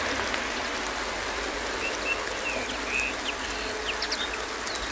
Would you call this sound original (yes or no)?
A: yes